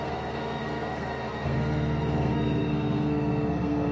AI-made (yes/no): yes